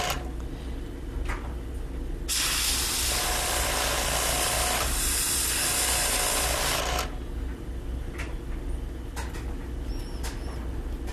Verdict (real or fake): real